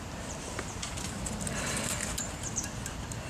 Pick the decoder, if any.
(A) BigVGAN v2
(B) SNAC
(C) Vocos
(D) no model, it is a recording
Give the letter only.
A